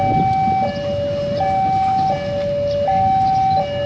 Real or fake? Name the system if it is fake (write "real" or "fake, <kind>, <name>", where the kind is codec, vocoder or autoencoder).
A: real